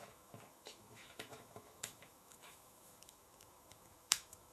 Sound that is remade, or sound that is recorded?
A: remade